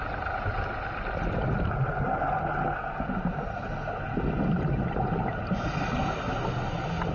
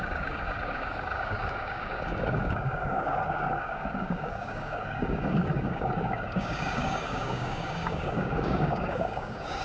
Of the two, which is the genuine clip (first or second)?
first